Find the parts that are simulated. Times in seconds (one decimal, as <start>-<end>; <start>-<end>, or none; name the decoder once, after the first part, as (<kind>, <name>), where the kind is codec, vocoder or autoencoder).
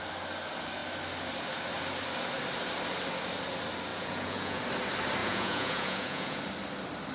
3.9-4.6 (vocoder, Vocos); 5.2-6.4